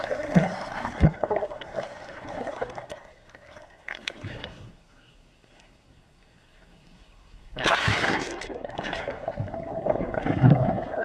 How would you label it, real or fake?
fake